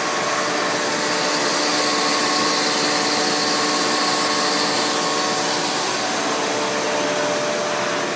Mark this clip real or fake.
real